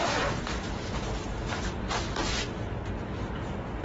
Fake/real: real